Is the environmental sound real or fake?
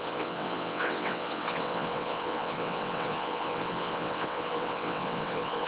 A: fake